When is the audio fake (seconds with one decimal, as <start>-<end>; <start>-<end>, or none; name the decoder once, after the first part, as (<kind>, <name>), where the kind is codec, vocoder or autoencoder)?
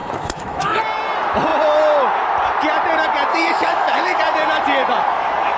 0.0-0.8 (autoencoder, DAC-VAE); 3.3-4.2